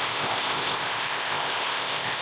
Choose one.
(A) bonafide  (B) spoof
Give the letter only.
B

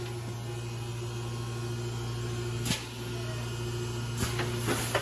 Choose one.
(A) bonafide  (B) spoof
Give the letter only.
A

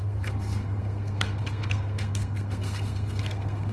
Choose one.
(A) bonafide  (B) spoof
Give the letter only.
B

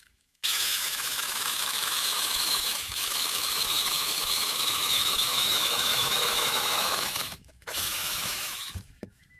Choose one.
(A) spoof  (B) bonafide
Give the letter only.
A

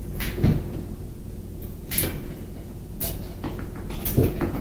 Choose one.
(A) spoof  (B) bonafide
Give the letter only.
A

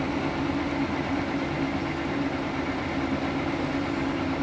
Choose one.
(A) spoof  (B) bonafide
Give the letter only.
B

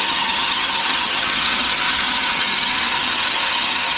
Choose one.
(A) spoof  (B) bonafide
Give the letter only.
A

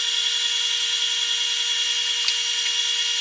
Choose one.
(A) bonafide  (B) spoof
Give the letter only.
A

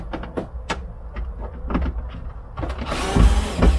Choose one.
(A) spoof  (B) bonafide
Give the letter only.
B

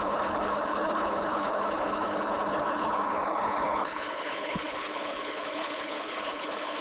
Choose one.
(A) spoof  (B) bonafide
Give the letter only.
A